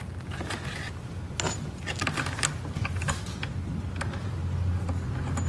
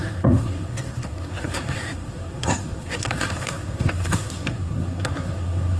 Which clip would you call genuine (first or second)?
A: first